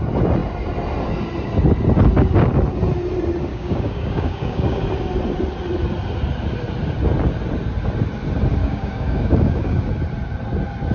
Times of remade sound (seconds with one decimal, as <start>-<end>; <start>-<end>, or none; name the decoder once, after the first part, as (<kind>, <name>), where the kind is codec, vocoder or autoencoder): 3.5-4.8 (codec, DAC); 8.6-9.9